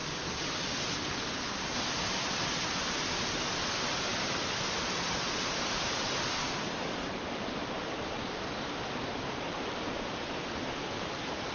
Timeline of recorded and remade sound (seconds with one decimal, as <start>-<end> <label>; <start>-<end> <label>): 0.0-1.4 recorded; 1.4-11.5 remade

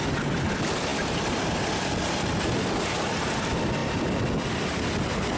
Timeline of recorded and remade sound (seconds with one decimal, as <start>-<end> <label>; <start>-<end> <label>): 0.0-5.4 recorded

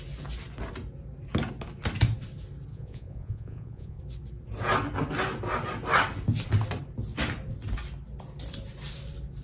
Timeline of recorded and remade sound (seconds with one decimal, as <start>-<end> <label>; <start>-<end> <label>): 0.0-2.7 recorded; 2.7-4.0 remade; 4.0-9.4 recorded